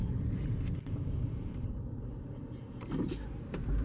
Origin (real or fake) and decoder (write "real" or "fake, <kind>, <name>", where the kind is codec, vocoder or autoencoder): fake, vocoder, BigVGAN v2